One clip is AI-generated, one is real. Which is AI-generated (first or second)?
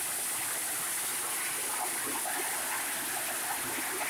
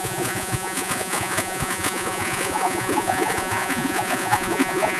second